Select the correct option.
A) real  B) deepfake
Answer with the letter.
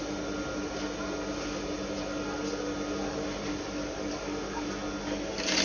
A